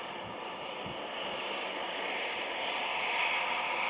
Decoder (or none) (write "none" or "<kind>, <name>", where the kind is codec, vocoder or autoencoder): none